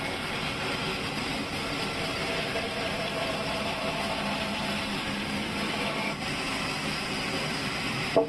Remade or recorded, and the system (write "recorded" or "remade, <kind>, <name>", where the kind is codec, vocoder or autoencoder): recorded